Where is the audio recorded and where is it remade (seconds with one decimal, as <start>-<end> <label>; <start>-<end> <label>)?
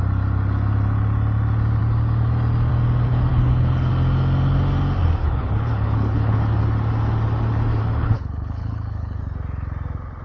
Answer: 0.0-3.3 recorded; 3.3-3.9 remade; 3.9-5.2 recorded; 5.2-6.6 remade; 6.6-7.8 recorded; 7.8-9.2 remade; 9.2-10.2 recorded